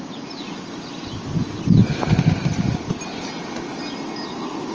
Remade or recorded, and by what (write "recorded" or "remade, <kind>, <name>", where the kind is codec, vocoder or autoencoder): recorded